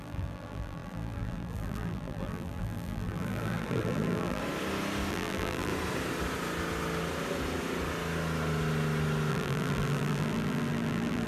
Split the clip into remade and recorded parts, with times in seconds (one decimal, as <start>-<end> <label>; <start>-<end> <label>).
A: 0.0-4.4 remade; 4.4-5.1 recorded; 5.1-5.7 remade; 5.7-9.3 recorded; 9.3-11.3 remade